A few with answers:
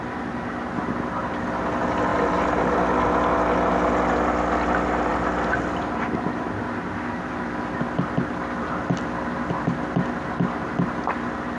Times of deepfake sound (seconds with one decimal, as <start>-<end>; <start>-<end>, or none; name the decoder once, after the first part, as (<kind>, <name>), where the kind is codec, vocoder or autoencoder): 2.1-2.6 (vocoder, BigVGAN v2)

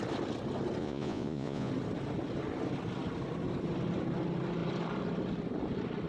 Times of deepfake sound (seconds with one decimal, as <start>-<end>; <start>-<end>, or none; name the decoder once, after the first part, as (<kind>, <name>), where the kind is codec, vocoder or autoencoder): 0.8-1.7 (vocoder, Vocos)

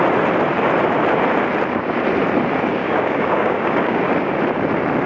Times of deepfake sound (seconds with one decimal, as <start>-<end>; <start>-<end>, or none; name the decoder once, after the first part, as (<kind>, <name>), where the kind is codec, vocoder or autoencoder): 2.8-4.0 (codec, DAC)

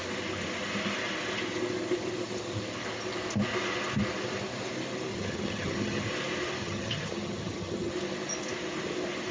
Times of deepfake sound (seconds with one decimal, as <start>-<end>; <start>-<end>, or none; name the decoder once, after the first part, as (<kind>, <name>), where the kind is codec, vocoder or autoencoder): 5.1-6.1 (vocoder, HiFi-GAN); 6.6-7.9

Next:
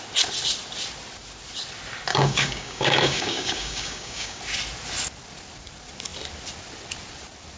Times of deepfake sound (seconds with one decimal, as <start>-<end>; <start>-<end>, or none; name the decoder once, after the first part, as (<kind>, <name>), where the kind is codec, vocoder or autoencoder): 2.1-4.4 (codec, DAC)

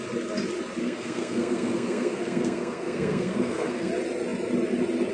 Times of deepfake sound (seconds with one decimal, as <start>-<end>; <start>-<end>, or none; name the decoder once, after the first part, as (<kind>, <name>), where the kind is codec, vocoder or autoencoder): 0.8-3.9 (codec, SNAC)